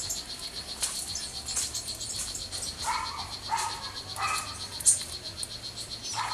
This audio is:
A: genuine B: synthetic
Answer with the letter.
A